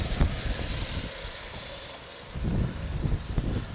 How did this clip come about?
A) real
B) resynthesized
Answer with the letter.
B